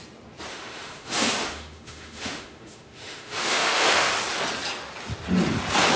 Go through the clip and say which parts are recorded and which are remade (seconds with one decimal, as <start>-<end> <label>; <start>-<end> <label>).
0.0-0.5 recorded; 0.5-4.1 remade; 4.1-6.0 recorded